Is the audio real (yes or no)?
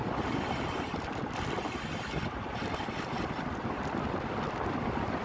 yes